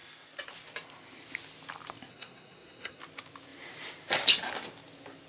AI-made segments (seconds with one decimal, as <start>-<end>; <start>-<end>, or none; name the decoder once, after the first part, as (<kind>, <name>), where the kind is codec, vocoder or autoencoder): 2.1-3.0 (codec, SNAC)